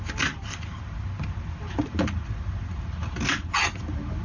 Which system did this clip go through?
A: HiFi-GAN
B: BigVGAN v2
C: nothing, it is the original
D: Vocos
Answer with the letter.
C